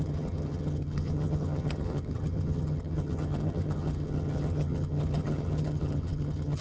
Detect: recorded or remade remade